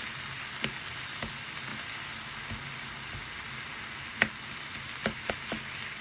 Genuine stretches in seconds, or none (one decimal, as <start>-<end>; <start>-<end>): 0.0-6.0